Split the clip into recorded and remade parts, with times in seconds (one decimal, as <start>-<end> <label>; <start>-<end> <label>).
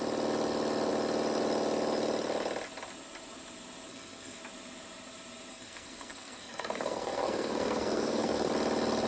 0.0-3.9 recorded; 3.9-4.4 remade; 4.4-5.5 recorded; 5.5-8.5 remade; 8.5-9.1 recorded